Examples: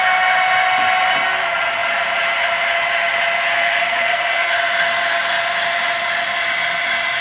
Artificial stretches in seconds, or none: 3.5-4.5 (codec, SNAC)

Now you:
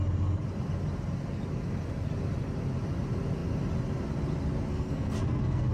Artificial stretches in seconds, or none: 4.7-5.7 (codec, SNAC)

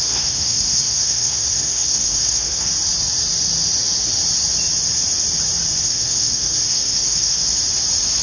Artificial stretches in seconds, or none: 0.0-2.7 (codec, SNAC); 5.8-7.4

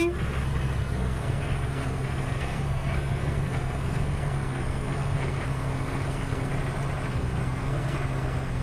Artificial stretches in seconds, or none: 0.0-6.5 (codec, SNAC); 7.1-8.6

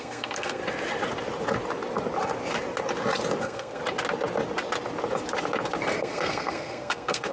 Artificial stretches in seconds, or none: 0.0-0.6 (codec, SNAC); 3.4-3.8; 6.0-7.3

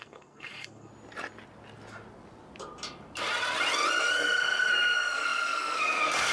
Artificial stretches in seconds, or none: 0.0-0.9 (codec, SNAC); 4.0-6.3

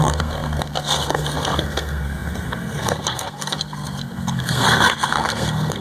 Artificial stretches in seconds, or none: 0.0-5.8 (codec, SNAC)

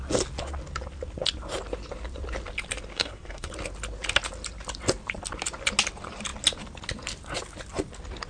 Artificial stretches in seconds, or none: 2.9-3.5 (codec, SNAC)